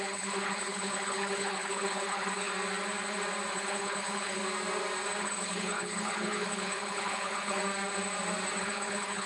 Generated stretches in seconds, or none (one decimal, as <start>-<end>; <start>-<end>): 0.0-2.5; 3.5-4.4; 5.2-7.6; 8.6-9.3